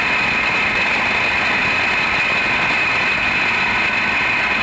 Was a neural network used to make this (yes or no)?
no